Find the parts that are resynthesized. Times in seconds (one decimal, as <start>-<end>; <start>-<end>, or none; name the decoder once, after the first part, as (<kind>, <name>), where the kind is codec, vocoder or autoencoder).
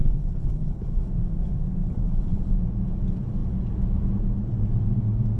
0.0-1.0 (codec, HILCodec); 1.8-2.4